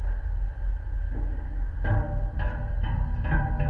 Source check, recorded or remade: recorded